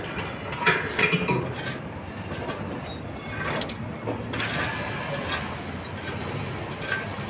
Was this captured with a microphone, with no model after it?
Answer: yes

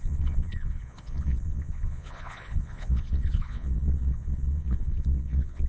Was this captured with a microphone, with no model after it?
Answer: no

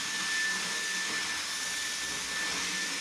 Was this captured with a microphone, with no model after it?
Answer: yes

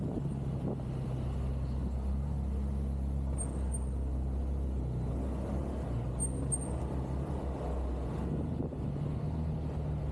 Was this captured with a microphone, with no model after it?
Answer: yes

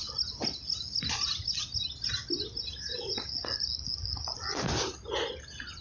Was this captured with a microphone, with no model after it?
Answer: yes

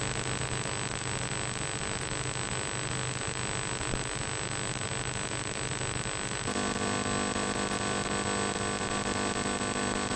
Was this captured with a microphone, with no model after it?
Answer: yes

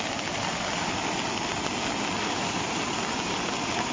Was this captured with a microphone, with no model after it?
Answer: yes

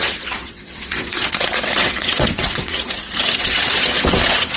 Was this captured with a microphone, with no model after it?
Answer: no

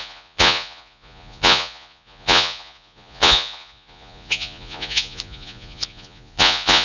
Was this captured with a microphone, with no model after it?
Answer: no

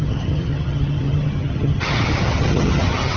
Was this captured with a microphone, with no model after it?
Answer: no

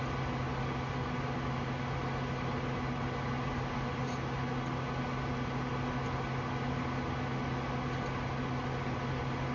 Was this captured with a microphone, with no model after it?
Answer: yes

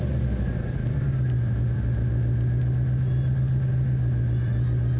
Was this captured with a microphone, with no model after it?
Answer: yes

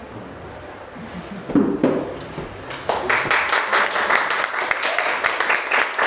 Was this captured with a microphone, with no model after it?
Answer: yes